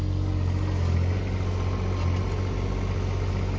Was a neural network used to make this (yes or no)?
no